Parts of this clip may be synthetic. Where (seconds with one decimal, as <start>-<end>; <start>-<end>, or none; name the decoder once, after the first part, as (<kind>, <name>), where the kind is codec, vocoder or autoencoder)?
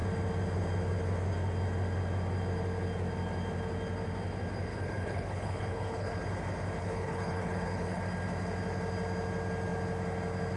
4.7-6.2 (codec, HILCodec); 6.8-8.0